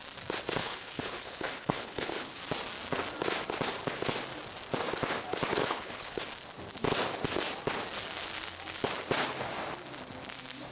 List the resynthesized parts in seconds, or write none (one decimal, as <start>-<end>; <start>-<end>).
0.6-2.4; 5.6-6.2